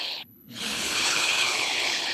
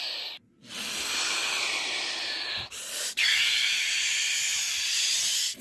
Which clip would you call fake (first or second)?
first